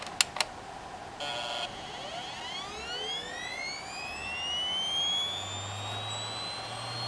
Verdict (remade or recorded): recorded